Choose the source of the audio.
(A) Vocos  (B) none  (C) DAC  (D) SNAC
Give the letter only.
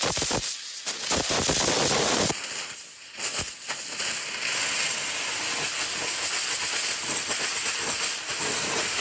B